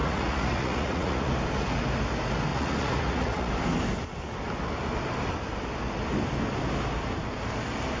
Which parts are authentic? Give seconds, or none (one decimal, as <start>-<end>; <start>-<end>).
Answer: 1.3-2.5; 3.5-8.0